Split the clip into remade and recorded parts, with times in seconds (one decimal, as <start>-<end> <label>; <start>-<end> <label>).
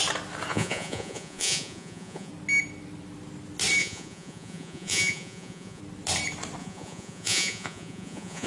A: 0.0-0.5 recorded; 0.5-2.3 remade; 2.3-3.8 recorded; 3.8-5.8 remade; 5.8-6.6 recorded; 6.6-8.5 remade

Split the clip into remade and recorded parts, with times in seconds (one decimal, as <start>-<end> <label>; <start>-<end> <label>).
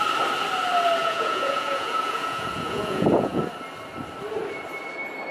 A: 0.0-1.0 recorded; 1.0-3.4 remade; 3.4-5.3 recorded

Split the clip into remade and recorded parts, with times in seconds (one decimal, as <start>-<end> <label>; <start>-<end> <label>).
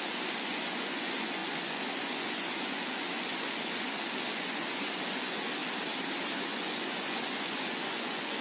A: 0.0-5.6 remade; 5.6-6.4 recorded; 6.4-8.4 remade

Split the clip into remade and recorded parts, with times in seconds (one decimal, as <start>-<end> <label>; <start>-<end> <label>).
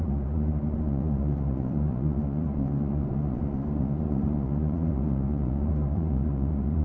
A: 0.0-6.8 remade